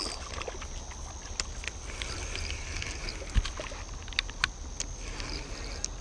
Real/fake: real